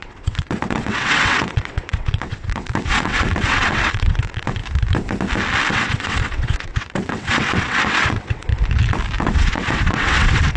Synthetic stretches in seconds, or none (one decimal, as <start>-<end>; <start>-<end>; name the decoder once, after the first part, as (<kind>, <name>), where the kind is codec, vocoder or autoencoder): 0.0-4.6 (vocoder, WaveNeXt); 5.7-8.5; 9.2-10.6